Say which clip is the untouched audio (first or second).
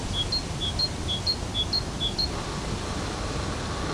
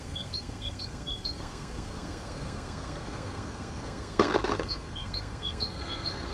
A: first